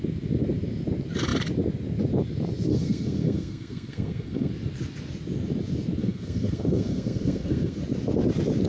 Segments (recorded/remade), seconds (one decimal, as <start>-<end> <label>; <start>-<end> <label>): 0.0-2.7 recorded; 2.7-4.5 remade; 4.5-6.0 recorded; 6.0-7.8 remade; 7.8-8.7 recorded